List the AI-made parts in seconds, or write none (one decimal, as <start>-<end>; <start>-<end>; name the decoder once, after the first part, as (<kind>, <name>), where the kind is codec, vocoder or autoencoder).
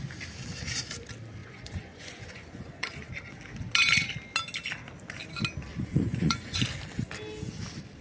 1.4-3.1 (vocoder, Vocos); 5.7-6.6